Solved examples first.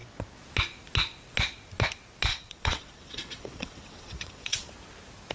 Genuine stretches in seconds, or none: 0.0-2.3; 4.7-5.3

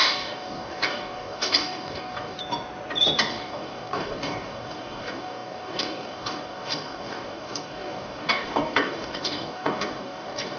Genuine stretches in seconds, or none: 2.4-3.3